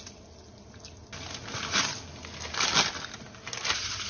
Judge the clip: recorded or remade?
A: recorded